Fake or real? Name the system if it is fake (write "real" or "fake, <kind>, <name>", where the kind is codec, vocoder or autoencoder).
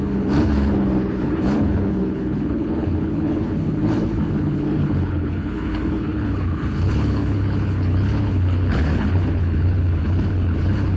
fake, codec, HILCodec